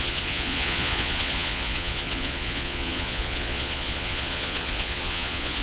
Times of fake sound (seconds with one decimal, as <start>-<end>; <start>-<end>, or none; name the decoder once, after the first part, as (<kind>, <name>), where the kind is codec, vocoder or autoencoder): 0.0-5.6 (vocoder, Vocos)